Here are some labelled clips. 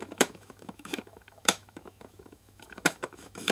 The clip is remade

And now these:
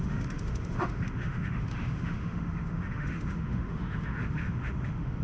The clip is remade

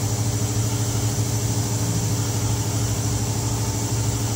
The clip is recorded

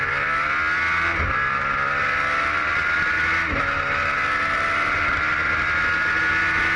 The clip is recorded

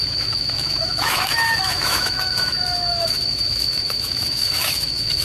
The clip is remade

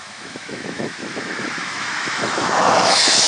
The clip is remade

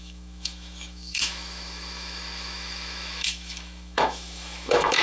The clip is remade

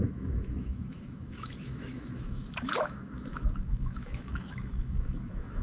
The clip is remade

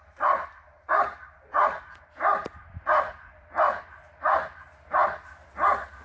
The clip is recorded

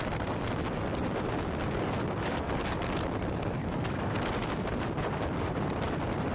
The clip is recorded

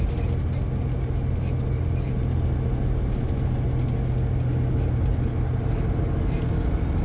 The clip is recorded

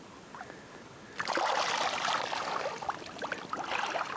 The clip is recorded